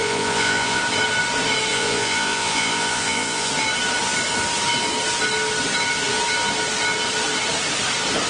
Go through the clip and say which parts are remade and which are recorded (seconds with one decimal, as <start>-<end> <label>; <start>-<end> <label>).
0.0-0.8 remade; 0.8-1.7 recorded; 1.7-3.5 remade; 3.5-8.3 recorded